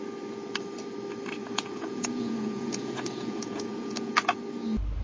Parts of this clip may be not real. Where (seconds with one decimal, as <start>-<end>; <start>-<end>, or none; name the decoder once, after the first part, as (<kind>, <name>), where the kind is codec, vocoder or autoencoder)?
1.4-4.4 (vocoder, Vocos)